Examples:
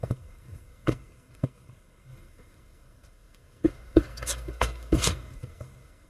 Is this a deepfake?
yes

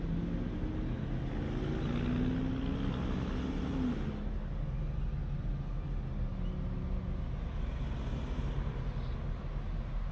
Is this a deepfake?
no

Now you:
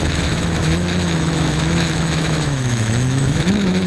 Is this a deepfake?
yes